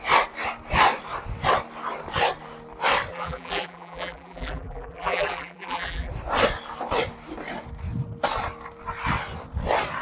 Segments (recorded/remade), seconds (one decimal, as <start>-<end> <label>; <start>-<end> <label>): 0.0-3.1 recorded; 3.1-6.1 remade; 6.1-10.0 recorded